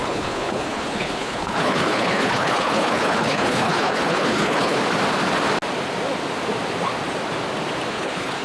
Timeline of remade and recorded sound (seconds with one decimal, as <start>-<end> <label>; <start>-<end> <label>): 0.0-4.8 remade; 4.8-7.9 recorded; 7.9-8.4 remade